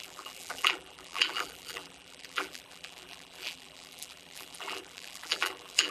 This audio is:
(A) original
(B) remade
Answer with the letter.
B